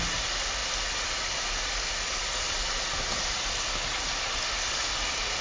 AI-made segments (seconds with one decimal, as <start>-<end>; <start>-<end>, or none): none